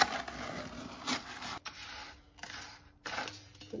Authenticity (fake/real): real